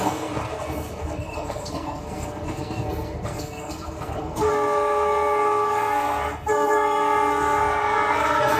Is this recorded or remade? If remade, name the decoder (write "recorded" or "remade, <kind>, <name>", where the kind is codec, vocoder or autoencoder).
remade, codec, SNAC